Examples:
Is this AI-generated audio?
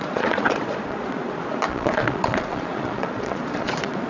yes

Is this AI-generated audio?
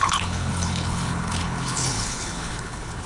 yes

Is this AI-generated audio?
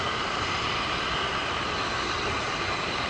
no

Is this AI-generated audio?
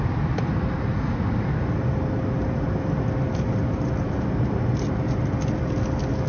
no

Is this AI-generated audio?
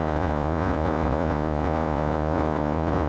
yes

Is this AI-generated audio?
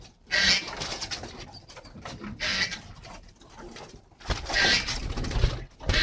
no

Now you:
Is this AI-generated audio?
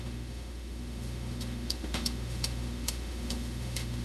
yes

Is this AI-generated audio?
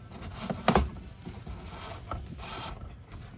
no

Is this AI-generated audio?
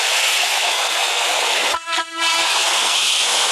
yes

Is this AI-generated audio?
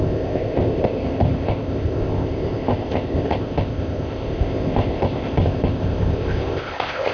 yes